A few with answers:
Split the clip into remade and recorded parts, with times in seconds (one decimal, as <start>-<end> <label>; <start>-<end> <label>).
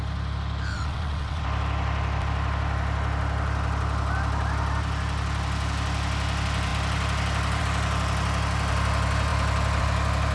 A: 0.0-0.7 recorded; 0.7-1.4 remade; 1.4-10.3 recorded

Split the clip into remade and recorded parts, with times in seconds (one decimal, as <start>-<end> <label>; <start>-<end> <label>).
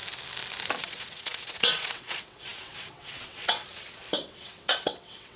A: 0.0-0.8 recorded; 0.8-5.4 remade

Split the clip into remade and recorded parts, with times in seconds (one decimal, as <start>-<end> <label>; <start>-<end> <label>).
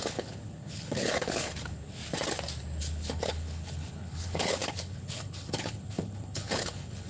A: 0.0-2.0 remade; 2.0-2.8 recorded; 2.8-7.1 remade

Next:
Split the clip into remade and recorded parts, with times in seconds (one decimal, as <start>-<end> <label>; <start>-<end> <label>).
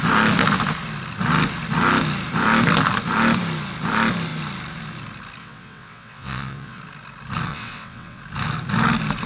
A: 0.0-5.4 recorded; 5.4-6.8 remade; 6.8-7.5 recorded; 7.5-8.2 remade; 8.2-9.3 recorded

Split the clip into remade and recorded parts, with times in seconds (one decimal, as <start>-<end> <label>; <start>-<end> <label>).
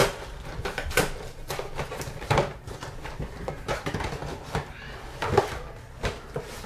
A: 0.0-6.7 recorded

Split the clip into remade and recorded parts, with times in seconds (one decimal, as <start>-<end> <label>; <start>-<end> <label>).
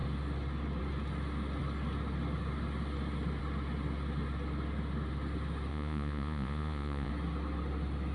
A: 0.0-5.7 recorded; 5.7-7.1 remade; 7.1-8.1 recorded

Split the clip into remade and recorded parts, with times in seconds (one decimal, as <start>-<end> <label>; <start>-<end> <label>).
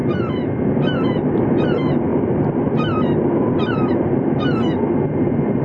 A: 0.0-0.7 recorded; 0.7-5.6 remade